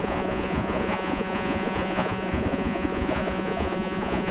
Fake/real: fake